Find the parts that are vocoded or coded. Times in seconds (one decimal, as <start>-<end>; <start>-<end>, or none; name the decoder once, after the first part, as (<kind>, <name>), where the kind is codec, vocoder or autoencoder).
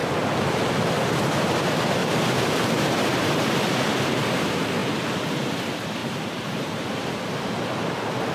2.0-4.2 (vocoder, BigVGAN v2); 6.0-7.2